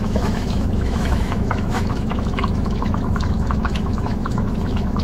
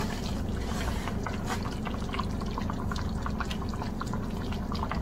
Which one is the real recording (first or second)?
second